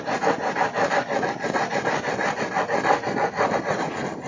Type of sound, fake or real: real